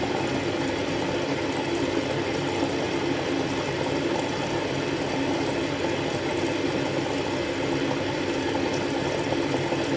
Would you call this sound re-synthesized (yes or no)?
no